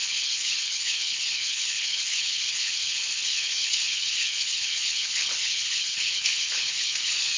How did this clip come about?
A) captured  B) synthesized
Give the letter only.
B